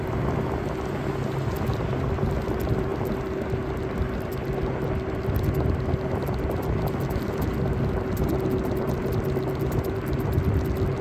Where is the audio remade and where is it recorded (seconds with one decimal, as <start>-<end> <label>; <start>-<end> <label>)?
0.0-11.0 recorded